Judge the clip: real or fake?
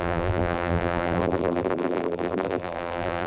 fake